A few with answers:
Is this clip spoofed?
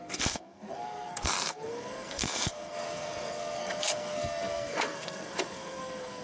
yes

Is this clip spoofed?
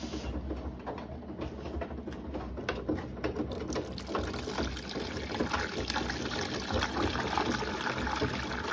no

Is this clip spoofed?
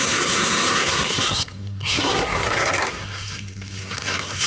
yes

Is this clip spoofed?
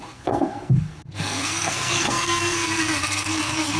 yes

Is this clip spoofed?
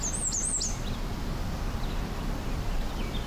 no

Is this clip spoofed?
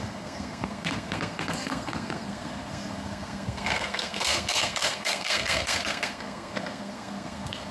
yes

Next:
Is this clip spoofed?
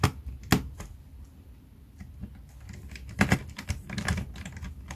no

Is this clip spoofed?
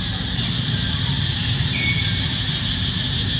no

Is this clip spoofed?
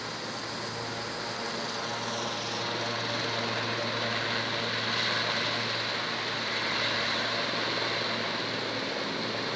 no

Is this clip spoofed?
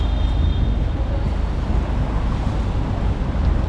no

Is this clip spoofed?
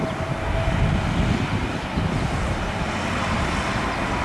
no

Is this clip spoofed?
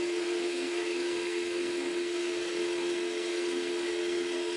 yes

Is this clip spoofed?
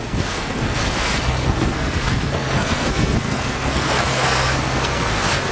yes